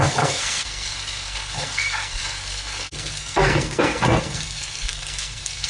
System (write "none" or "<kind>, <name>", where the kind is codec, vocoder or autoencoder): codec, SNAC